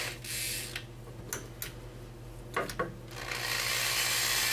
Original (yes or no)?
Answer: yes